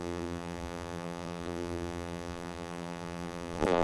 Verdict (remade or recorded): remade